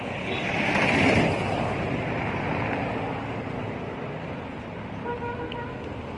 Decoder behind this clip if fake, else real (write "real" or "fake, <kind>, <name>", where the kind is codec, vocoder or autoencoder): fake, vocoder, BigVGAN v2